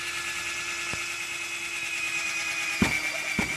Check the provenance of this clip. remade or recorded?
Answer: recorded